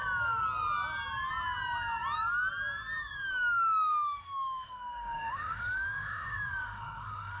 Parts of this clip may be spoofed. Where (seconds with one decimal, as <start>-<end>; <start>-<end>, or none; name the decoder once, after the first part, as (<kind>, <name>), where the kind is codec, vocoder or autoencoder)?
3.0-7.4 (autoencoder, DAC-VAE)